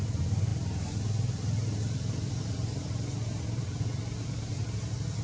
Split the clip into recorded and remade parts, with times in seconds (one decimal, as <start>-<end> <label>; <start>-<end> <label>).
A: 0.0-5.2 recorded